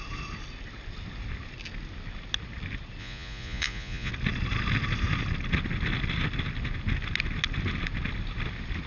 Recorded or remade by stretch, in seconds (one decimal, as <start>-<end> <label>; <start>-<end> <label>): 0.0-3.0 recorded; 3.0-4.1 remade; 4.1-8.9 recorded